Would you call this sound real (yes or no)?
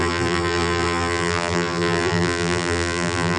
no